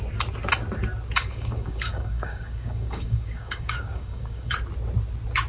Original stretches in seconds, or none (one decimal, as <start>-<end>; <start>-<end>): 0.0-1.2; 4.5-5.5